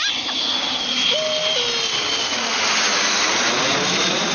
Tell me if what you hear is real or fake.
real